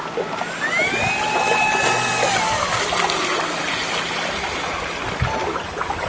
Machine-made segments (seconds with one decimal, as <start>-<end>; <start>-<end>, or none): none